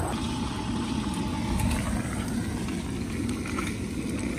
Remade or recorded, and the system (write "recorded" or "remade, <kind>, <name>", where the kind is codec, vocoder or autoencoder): recorded